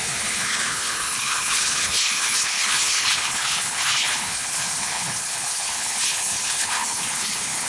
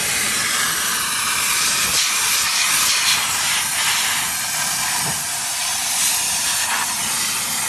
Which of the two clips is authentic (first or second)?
second